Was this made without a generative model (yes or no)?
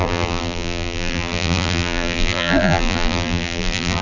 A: no